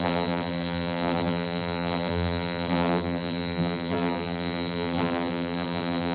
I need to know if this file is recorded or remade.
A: remade